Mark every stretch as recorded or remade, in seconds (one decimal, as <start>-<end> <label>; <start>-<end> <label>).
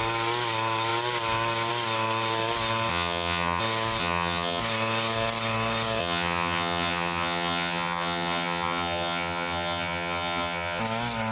0.0-2.9 recorded; 2.9-3.6 remade; 3.6-4.0 recorded; 4.0-4.6 remade; 4.6-6.0 recorded; 6.0-10.8 remade; 10.8-11.3 recorded